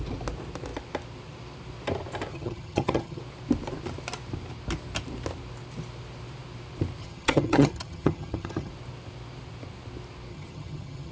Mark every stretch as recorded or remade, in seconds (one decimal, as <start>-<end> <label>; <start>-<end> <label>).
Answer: 0.0-2.3 recorded; 2.3-3.2 remade; 3.2-7.0 recorded; 7.0-8.7 remade; 8.7-10.3 recorded; 10.3-11.1 remade